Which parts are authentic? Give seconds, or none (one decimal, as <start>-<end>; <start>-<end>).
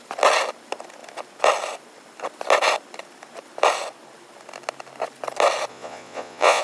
0.0-5.7